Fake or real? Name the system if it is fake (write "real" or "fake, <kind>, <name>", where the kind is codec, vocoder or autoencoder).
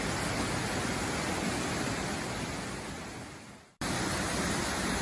real